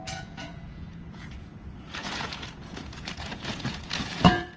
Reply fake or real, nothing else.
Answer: fake